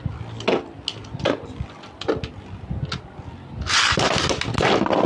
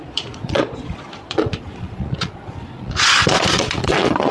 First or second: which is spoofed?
second